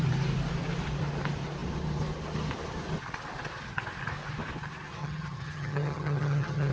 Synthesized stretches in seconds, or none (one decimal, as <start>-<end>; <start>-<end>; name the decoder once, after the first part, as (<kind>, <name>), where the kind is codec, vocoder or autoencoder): 5.0-6.7 (vocoder, HiFi-GAN)